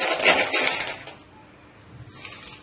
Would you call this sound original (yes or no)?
yes